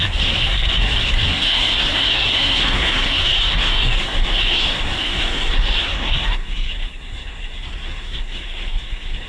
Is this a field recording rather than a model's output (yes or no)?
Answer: no